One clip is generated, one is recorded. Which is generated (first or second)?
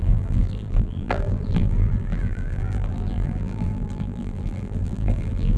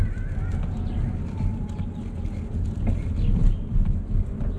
first